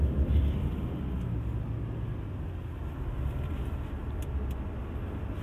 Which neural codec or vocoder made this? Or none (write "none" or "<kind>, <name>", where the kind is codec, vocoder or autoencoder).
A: none